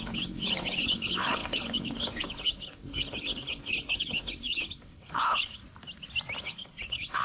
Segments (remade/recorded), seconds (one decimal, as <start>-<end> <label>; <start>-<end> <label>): 0.0-5.6 remade; 5.6-6.4 recorded; 6.4-7.2 remade